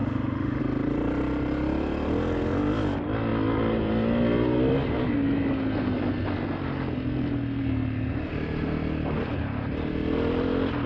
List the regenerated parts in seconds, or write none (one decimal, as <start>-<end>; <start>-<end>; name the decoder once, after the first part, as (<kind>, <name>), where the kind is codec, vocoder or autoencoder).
0.0-0.6 (autoencoder, DAC-VAE)